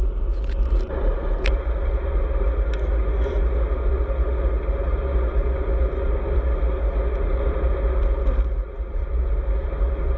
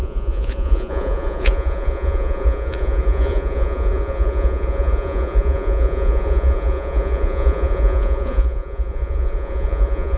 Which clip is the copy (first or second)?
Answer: second